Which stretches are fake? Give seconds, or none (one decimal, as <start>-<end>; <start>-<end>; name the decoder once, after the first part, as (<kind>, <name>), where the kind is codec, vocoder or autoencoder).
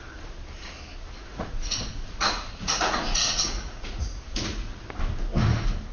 1.3-4.8 (vocoder, Vocos)